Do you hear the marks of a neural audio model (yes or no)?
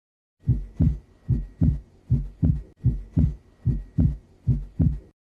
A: no